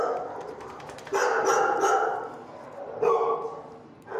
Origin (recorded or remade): recorded